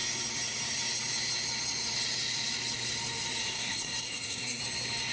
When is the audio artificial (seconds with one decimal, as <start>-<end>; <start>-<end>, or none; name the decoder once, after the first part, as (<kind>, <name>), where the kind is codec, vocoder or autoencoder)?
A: 3.4-4.6 (codec, SNAC)